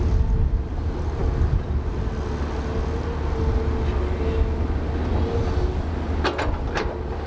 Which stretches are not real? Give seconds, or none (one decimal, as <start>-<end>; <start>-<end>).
none